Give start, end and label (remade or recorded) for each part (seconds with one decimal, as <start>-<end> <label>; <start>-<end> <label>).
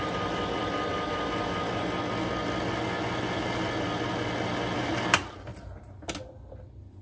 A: 0.0-7.0 recorded